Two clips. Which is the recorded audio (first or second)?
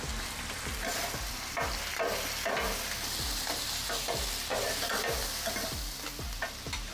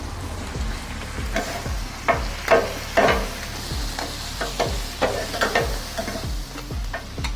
second